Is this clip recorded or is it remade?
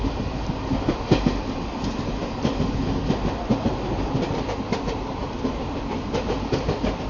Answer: recorded